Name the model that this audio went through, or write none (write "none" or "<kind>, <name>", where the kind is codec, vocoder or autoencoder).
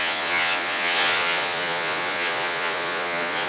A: vocoder, Vocos